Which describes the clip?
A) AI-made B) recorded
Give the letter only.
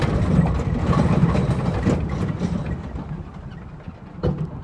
B